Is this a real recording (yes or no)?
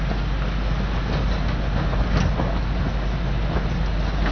yes